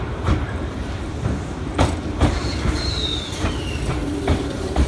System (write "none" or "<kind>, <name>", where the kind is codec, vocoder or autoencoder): vocoder, BigVGAN v2